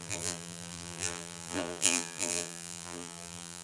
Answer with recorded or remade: remade